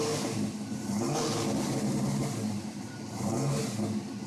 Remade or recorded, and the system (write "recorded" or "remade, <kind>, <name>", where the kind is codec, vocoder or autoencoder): recorded